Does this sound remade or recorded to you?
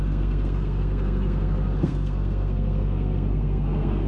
remade